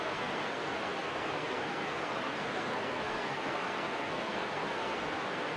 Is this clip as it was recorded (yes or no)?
no